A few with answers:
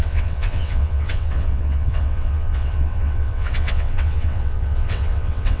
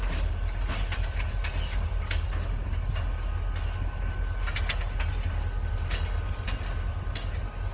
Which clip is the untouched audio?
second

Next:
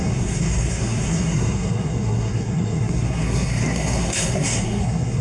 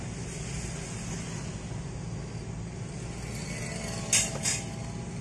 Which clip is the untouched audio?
second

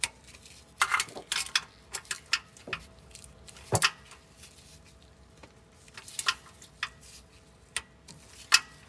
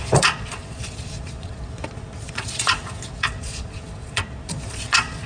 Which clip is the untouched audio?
first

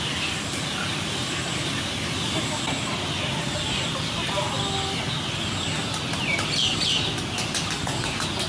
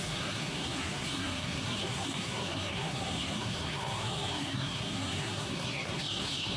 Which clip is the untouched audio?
first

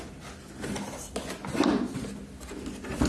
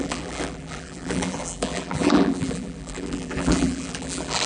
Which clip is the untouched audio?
first